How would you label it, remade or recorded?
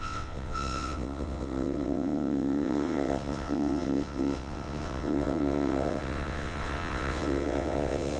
remade